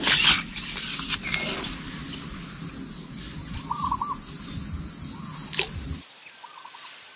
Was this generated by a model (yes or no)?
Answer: no